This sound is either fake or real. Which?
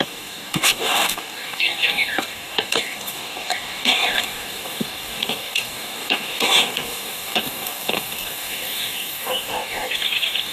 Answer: fake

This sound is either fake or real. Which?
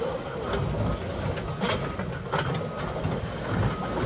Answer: real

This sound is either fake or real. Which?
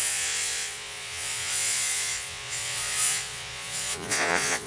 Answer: fake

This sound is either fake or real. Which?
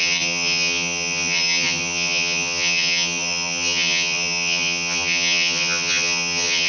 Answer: fake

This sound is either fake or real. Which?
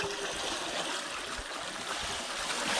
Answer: real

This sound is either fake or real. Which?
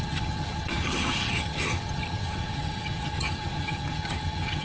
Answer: fake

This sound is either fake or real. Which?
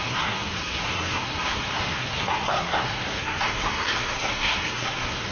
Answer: fake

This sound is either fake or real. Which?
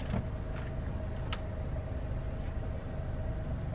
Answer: real